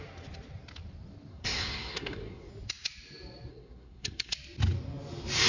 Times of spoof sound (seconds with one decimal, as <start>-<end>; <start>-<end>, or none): 1.3-2.5; 3.5-4.3